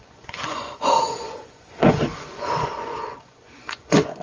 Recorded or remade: remade